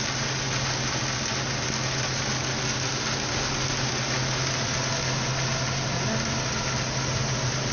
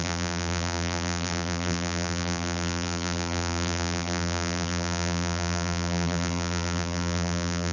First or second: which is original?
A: first